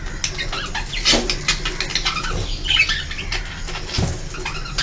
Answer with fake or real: real